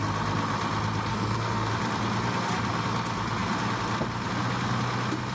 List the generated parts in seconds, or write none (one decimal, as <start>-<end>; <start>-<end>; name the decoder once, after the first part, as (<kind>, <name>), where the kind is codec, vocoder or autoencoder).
1.1-1.7 (codec, SNAC)